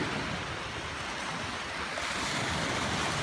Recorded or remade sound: recorded